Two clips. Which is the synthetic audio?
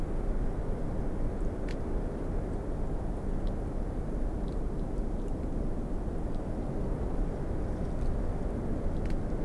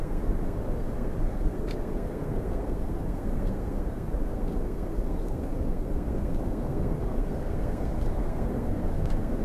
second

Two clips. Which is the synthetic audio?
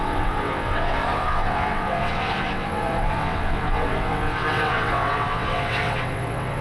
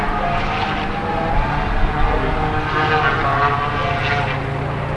first